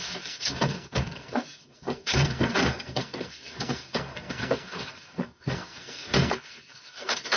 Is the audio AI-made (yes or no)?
yes